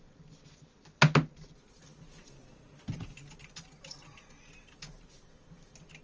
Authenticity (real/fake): real